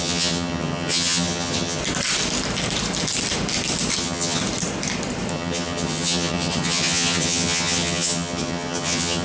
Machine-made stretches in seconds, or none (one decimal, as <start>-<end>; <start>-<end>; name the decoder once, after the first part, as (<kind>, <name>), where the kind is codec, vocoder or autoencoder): 0.0-1.8 (vocoder, HiFi-GAN); 4.0-4.4; 5.3-9.2